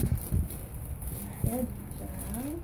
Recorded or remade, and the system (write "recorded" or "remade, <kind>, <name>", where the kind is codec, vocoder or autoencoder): recorded